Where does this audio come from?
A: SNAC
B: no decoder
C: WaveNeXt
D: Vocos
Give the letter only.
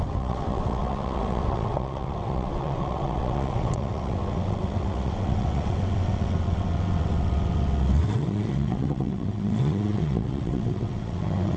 C